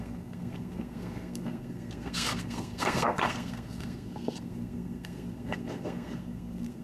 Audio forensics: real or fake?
fake